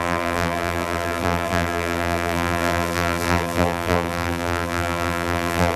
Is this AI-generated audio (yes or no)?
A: yes